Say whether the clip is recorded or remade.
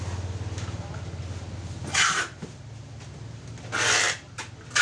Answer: recorded